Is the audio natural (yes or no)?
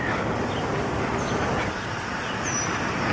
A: yes